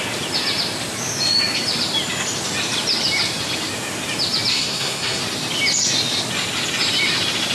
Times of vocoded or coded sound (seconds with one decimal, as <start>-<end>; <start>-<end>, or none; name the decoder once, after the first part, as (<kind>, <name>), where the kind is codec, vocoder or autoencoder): 4.5-5.2 (codec, SNAC)